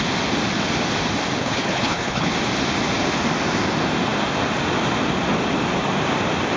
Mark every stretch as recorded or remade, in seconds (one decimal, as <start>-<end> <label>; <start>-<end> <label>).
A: 0.0-1.4 recorded; 1.4-2.3 remade; 2.3-6.6 recorded